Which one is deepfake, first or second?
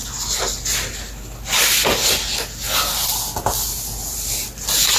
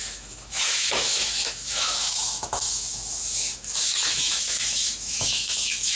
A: second